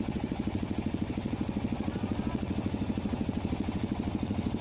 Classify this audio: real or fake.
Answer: fake